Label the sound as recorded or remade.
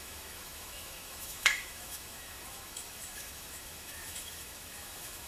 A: remade